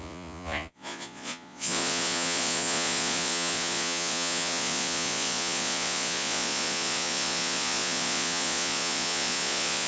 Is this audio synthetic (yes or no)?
yes